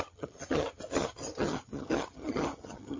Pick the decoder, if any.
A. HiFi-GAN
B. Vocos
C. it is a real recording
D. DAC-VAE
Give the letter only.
A